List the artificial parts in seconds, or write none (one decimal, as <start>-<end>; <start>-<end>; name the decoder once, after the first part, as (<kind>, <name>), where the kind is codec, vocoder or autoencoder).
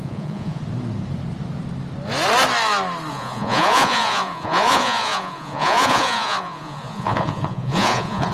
0.0-0.6 (vocoder, Vocos); 3.1-8.3